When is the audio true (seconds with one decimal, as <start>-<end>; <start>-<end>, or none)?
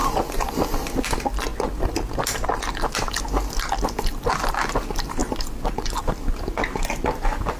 0.0-7.6